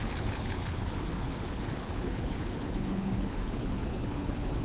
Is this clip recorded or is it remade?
remade